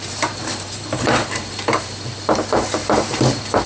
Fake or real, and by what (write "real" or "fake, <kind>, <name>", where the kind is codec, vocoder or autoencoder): fake, vocoder, BigVGAN v2